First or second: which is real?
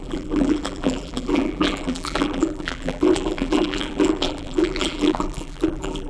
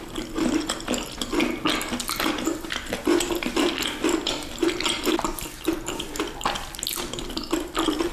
second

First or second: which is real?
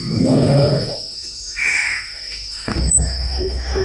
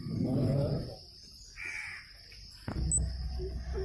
second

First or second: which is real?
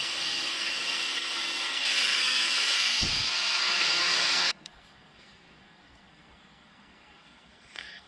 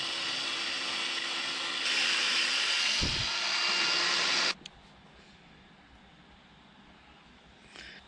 second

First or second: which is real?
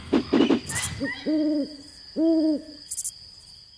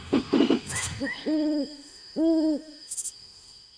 first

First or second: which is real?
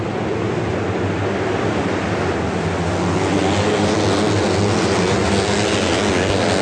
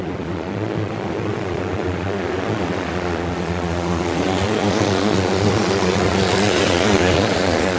first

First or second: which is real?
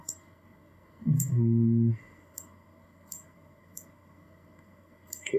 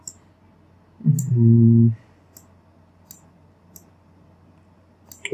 second